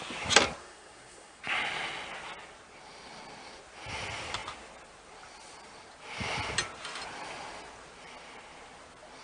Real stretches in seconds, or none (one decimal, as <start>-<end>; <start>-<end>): 0.0-0.6; 1.4-9.2